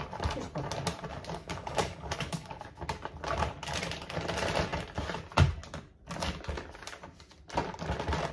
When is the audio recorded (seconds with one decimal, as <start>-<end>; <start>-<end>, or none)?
0.0-1.4; 2.6-8.3